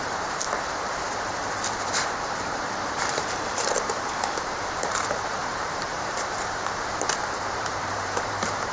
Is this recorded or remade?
remade